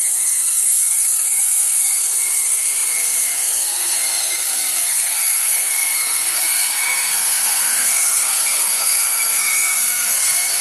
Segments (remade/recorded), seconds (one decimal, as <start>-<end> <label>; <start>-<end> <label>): 0.0-10.6 remade